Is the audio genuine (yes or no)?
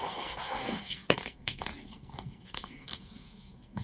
no